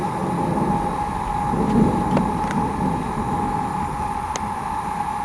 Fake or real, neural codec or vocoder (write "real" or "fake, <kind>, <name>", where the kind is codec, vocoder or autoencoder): real